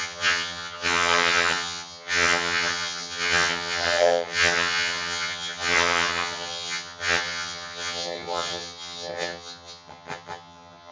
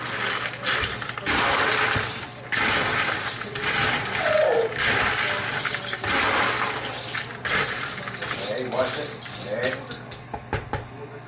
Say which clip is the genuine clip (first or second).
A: second